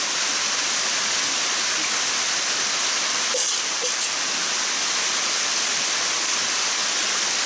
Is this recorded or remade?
recorded